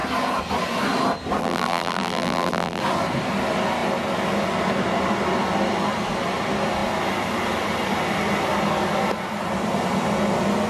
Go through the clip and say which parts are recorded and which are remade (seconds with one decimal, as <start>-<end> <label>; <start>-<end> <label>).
0.0-1.4 recorded; 1.4-2.8 remade; 2.8-10.7 recorded